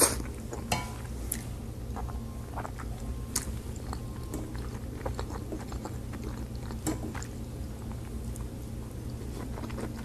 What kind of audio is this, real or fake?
real